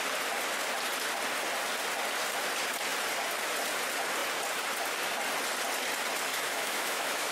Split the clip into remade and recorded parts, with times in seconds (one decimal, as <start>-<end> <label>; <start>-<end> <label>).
0.0-6.3 recorded; 6.3-7.3 remade